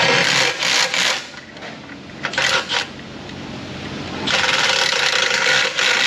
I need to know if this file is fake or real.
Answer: real